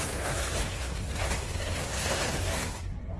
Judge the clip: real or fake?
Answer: fake